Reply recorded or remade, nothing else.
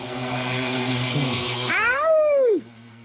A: remade